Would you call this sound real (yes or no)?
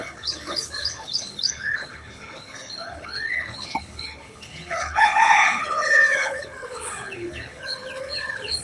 no